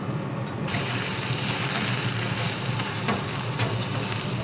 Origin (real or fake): fake